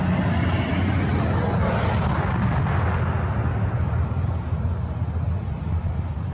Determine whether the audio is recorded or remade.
recorded